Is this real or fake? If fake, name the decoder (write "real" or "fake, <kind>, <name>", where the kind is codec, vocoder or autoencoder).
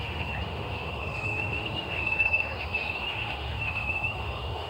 fake, autoencoder, DAC-VAE